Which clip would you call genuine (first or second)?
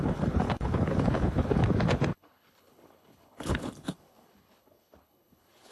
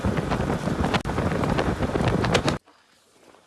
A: second